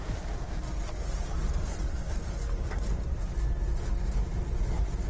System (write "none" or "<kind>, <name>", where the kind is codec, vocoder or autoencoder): none